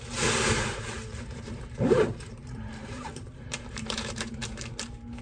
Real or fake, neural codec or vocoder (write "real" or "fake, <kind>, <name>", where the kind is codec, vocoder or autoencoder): fake, vocoder, BigVGAN v2